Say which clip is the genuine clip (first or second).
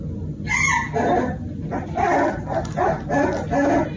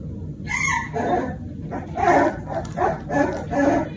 first